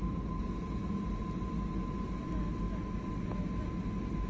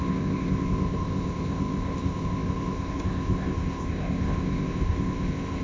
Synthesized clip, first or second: second